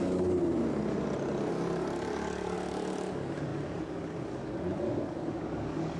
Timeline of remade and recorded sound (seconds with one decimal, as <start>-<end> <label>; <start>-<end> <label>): 0.0-0.4 remade; 0.4-1.5 recorded; 1.5-6.0 remade